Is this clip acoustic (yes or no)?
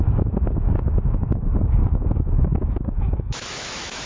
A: no